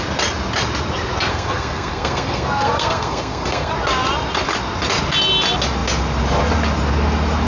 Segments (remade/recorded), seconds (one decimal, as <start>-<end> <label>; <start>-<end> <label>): 0.0-1.3 recorded; 1.3-3.7 remade; 3.7-7.5 recorded